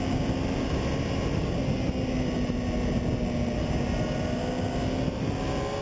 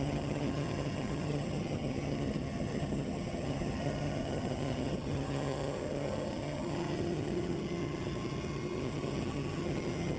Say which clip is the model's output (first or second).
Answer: second